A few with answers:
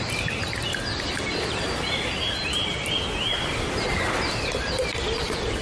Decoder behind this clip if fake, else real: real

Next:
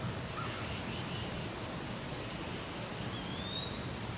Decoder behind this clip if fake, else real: real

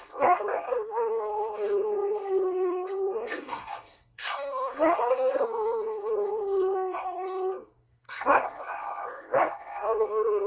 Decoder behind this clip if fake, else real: fake, codec, SNAC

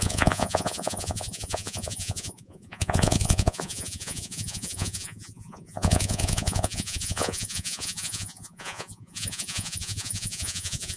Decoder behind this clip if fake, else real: fake, vocoder, Vocos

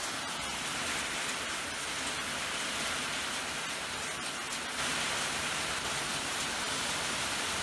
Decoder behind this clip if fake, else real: real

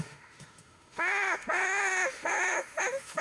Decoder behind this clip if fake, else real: fake, autoencoder, DAC-VAE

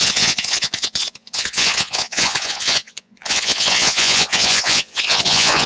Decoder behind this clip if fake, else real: fake, vocoder, Vocos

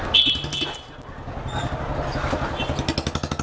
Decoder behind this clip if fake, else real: real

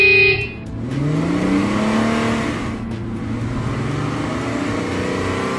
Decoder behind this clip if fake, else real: real